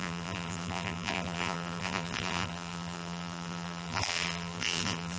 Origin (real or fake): fake